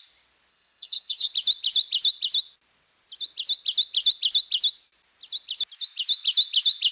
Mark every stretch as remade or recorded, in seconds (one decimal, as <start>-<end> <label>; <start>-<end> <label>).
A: 0.0-0.5 recorded; 0.5-1.3 remade; 1.3-6.9 recorded